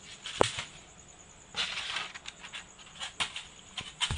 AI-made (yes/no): no